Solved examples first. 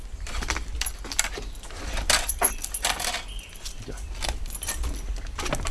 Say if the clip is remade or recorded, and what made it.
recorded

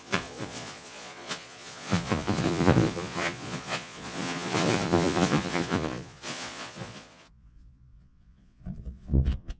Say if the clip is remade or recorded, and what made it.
remade, vocoder, Vocos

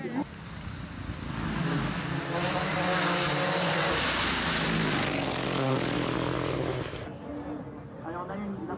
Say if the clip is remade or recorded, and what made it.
recorded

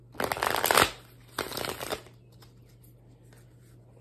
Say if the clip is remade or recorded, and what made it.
recorded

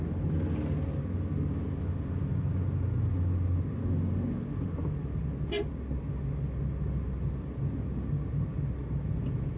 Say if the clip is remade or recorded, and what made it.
recorded